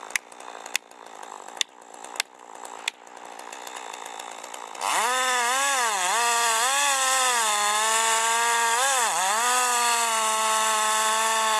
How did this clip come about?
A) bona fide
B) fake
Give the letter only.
A